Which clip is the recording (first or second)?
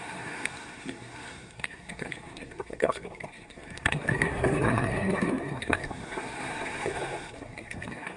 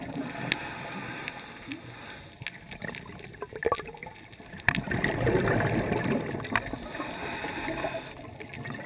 second